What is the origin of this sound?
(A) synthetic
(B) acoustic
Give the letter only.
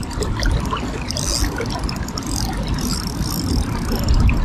B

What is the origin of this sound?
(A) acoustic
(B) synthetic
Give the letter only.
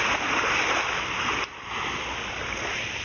A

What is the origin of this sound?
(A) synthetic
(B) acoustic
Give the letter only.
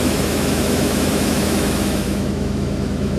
A